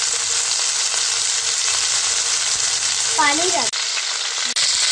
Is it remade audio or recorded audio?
recorded